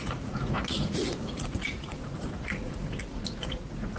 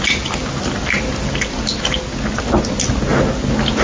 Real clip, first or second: second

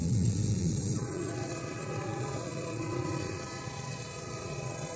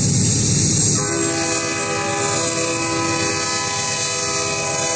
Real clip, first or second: second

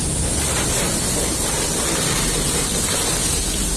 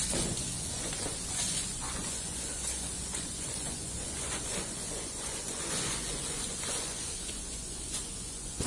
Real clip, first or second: first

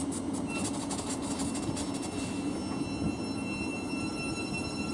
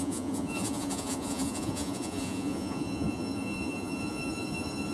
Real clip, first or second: first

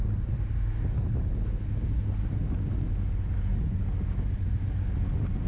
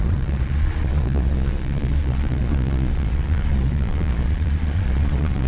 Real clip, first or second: first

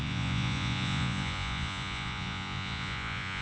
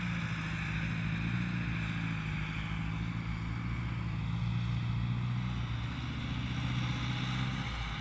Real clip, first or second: second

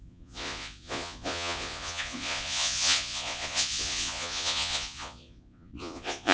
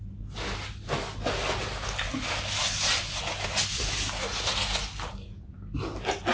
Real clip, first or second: second